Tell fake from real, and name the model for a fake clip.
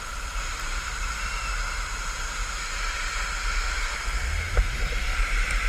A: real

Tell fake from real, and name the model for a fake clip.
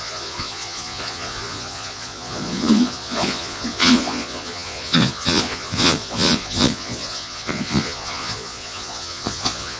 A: fake, vocoder, Vocos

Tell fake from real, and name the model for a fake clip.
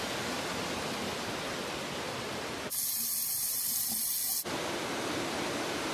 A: real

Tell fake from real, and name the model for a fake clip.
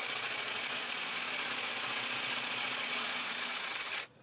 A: fake, vocoder, Vocos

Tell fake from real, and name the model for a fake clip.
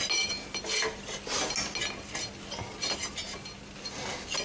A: real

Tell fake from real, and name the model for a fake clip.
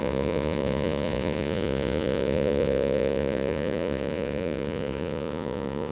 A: fake, vocoder, Vocos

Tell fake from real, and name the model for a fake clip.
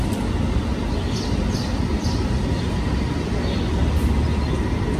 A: real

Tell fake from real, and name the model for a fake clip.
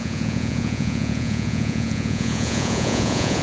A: fake, vocoder, Vocos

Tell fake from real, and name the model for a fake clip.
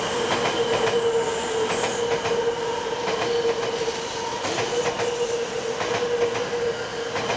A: real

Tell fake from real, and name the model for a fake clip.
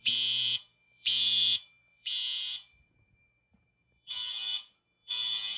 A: fake, vocoder, Vocos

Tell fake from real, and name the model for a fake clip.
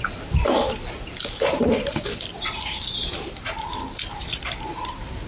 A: real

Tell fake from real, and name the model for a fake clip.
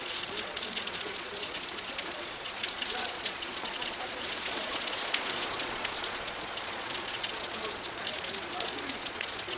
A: fake, vocoder, Vocos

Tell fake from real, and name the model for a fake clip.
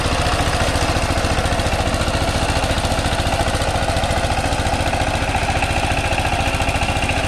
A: real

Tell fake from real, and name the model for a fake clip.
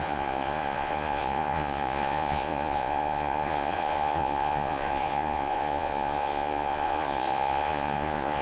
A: fake, vocoder, Vocos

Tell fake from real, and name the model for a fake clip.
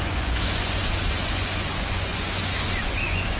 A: fake, vocoder, Vocos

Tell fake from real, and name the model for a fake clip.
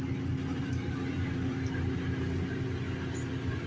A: real